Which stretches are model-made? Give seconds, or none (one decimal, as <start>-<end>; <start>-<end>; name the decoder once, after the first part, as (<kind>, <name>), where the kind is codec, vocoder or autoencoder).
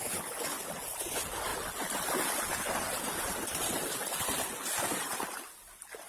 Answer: 1.5-5.2 (vocoder, BigVGAN v2)